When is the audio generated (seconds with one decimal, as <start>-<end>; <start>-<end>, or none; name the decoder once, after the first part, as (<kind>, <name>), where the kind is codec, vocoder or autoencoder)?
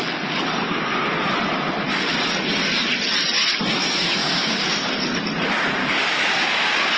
4.2-4.9 (codec, DAC); 5.8-7.0